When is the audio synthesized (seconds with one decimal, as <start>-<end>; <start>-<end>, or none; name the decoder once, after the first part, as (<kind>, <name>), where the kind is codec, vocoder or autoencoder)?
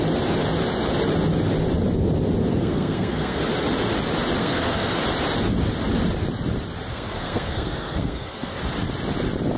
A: 2.5-3.4 (codec, SNAC); 4.4-5.0; 6.9-8.6